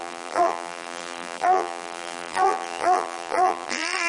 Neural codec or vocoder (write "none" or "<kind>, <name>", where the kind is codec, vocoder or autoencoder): vocoder, BigVGAN v2